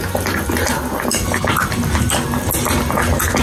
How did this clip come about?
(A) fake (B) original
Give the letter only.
B